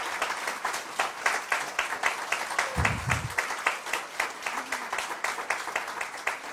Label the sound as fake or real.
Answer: real